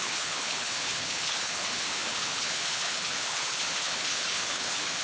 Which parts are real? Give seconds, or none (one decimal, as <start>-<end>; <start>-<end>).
none